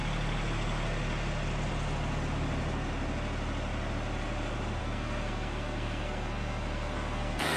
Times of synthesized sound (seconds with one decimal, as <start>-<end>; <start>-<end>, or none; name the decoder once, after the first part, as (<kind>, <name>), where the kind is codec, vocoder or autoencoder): 4.8-7.6 (codec, SNAC)